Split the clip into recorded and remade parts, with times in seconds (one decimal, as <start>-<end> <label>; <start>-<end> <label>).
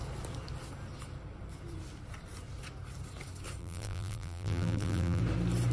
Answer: 0.0-3.6 recorded; 3.6-5.2 remade; 5.2-5.7 recorded